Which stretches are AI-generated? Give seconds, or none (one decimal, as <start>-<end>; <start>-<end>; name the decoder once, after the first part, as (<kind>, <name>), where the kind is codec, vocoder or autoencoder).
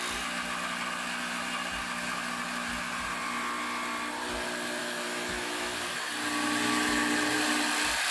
4.8-6.1 (autoencoder, DAC-VAE)